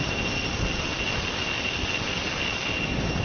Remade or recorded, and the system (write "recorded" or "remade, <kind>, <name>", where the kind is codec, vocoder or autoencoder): recorded